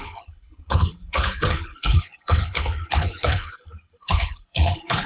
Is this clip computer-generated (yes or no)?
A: yes